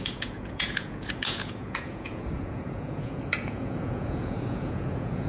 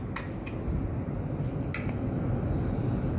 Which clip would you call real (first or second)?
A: second